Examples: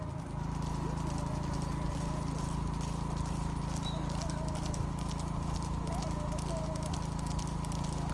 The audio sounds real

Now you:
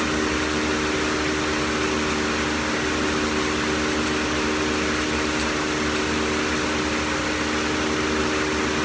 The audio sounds real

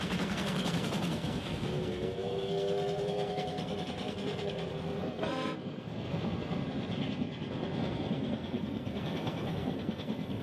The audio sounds fake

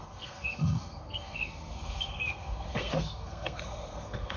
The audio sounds fake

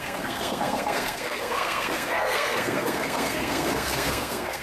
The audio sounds fake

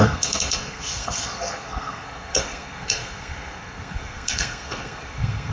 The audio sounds fake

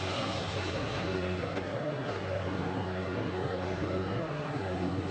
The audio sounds fake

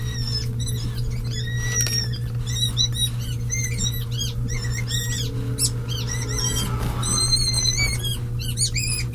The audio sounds real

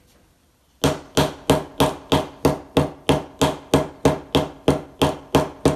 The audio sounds real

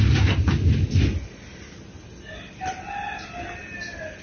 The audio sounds real